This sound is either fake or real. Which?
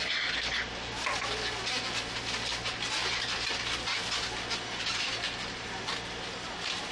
real